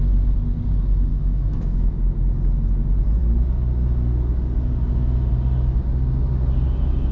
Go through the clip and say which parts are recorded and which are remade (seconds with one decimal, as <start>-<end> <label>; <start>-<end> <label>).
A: 0.0-1.1 recorded; 1.1-1.9 remade; 1.9-7.1 recorded